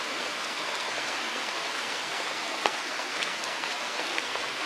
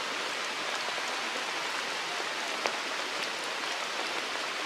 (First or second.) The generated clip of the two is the first